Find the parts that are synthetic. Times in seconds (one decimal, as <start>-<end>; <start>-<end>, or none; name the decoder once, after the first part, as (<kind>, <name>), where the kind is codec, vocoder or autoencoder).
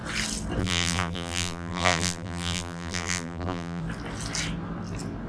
0.6-3.8 (vocoder, BigVGAN v2)